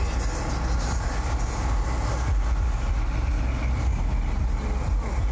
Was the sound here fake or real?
real